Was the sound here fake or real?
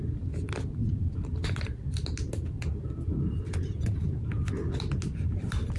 real